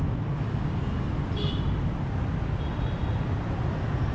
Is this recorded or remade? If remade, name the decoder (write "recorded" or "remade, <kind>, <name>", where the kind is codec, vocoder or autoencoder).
recorded